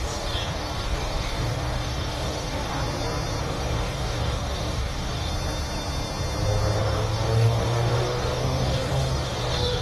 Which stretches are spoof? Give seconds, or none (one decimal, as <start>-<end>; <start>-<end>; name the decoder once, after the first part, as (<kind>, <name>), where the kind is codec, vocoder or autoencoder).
0.0-2.8 (codec, DAC); 3.4-5.3; 6.8-9.8